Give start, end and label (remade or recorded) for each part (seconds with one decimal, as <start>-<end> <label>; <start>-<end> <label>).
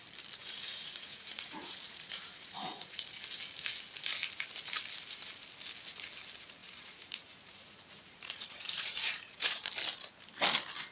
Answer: 0.0-0.4 recorded; 0.4-3.0 remade; 3.0-6.6 recorded; 6.6-9.7 remade; 9.7-10.9 recorded